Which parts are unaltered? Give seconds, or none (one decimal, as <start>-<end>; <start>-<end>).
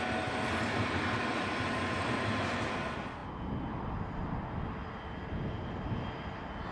0.0-6.7